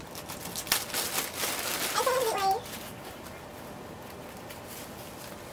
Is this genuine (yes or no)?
yes